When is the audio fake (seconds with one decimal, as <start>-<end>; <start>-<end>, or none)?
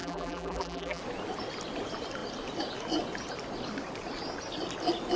0.0-1.0